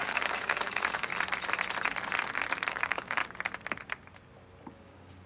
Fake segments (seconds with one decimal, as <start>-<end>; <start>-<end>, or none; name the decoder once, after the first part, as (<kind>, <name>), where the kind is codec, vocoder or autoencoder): 0.0-1.1 (codec, DAC); 2.7-3.2; 4.7-5.3